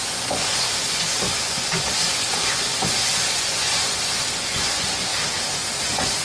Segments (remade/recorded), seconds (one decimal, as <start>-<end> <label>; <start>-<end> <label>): 0.0-5.1 remade; 5.1-5.8 recorded; 5.8-6.2 remade